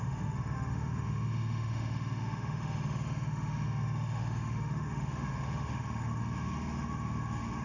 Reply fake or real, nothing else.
fake